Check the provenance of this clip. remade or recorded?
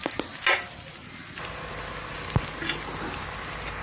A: recorded